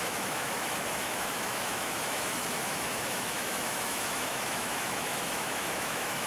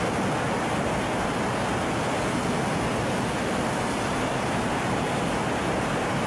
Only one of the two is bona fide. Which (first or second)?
second